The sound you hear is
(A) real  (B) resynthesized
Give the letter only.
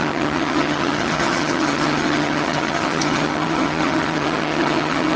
B